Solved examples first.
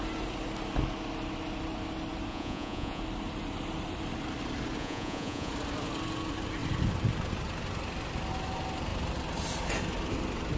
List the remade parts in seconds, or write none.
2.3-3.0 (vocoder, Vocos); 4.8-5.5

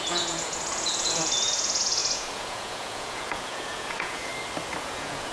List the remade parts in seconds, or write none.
0.0-4.3 (vocoder, Vocos); 4.8-5.3